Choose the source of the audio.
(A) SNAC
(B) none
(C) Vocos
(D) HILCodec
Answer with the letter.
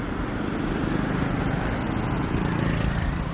B